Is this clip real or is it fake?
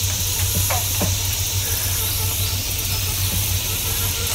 real